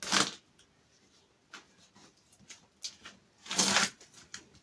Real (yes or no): yes